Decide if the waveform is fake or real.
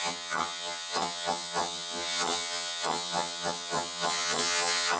fake